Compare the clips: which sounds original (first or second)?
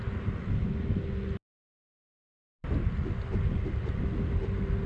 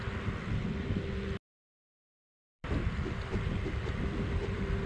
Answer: first